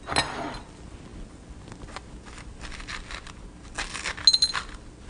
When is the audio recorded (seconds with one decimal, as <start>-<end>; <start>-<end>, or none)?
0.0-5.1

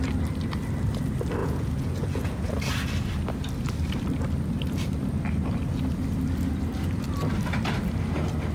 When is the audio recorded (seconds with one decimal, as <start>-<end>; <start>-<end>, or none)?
0.0-1.4; 2.5-8.5

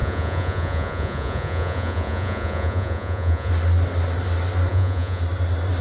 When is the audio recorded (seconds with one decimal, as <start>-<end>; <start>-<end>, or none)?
3.5-4.7; 5.2-5.8

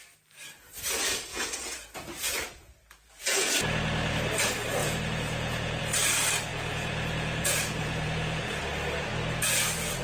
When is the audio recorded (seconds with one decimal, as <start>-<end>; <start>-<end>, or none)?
0.0-1.3; 3.5-4.8; 5.8-6.5; 8.6-10.0

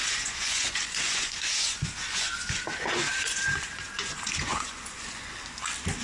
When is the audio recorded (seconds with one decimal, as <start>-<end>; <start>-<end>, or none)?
5.3-6.0